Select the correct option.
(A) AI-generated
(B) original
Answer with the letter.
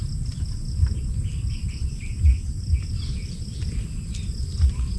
B